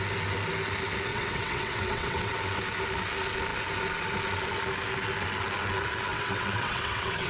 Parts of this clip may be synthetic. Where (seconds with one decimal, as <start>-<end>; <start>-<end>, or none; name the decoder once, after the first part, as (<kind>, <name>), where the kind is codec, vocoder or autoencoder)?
1.1-2.3 (vocoder, WaveNeXt); 6.1-7.3